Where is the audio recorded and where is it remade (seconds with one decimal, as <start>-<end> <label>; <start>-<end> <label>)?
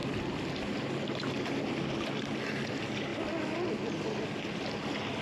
0.0-5.2 recorded